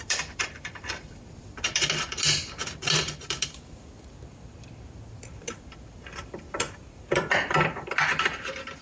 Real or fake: fake